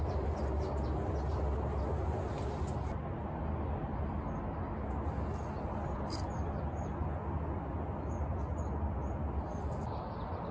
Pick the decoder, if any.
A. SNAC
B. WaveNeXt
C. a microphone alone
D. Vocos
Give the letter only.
C